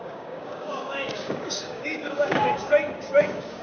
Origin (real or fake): fake